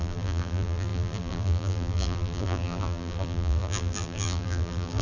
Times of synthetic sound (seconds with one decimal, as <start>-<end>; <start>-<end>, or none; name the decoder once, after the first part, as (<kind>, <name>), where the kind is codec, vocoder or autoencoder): 0.0-5.0 (vocoder, BigVGAN v2)